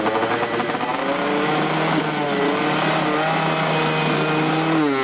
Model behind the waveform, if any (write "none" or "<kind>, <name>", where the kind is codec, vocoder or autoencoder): none